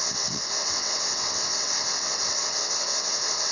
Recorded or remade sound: remade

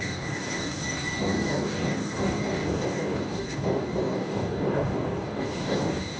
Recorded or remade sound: remade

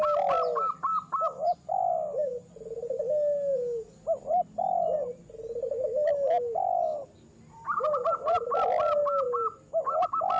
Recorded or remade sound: recorded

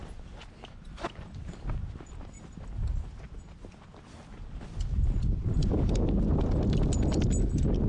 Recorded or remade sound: recorded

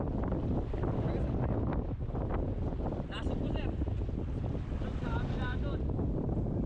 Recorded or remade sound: recorded